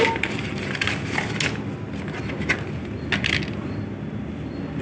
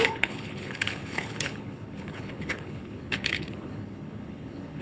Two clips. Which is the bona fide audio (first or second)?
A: first